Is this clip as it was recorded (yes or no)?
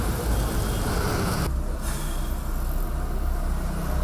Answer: yes